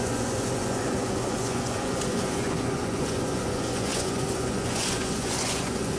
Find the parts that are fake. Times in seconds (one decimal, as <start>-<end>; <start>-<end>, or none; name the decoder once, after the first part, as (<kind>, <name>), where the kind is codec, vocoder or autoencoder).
0.0-6.0 (vocoder, Vocos)

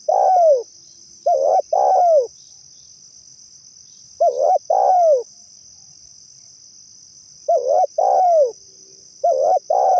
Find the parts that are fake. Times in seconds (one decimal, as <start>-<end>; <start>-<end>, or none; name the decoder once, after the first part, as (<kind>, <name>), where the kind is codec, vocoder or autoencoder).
none

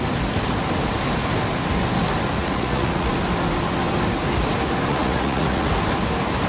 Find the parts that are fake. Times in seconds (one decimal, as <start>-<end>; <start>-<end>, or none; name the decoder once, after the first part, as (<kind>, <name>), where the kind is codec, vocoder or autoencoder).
2.4-3.1 (vocoder, Vocos); 4.9-5.7

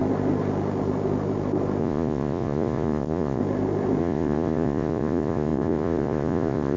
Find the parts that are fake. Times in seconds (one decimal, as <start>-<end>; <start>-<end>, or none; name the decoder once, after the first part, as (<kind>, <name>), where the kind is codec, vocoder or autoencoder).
1.8-3.4 (vocoder, Vocos); 4.0-6.8